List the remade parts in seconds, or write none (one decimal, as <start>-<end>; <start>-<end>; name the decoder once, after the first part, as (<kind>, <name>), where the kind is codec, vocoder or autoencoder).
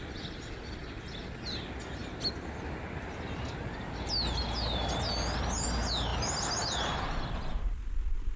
none